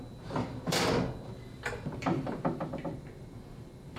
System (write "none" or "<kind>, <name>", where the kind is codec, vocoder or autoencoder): vocoder, BigVGAN v2